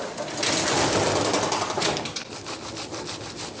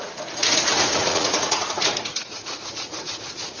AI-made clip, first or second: second